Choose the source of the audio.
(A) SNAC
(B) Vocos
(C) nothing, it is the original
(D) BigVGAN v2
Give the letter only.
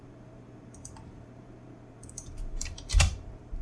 D